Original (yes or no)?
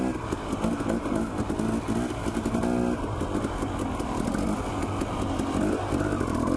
yes